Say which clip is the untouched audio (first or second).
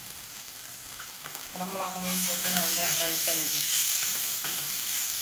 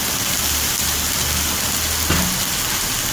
second